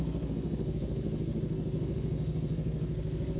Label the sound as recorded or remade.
remade